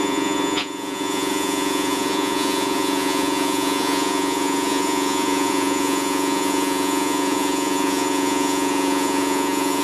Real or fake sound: fake